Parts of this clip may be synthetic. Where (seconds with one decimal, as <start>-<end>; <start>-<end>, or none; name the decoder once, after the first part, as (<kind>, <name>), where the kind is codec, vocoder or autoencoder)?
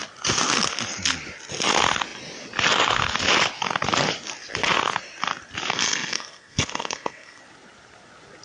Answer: 5.7-7.4 (codec, SNAC)